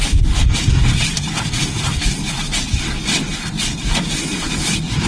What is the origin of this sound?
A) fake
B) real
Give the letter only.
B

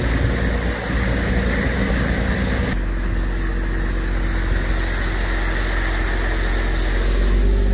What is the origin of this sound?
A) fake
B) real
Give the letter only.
B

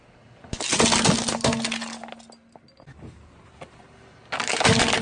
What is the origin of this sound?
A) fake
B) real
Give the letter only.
B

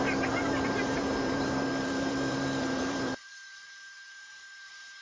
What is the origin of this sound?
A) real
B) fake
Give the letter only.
B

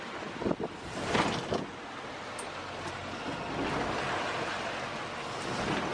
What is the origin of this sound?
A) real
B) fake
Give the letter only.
A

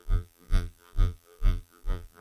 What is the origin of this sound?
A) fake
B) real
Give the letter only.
A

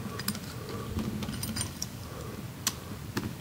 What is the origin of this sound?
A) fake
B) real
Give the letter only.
B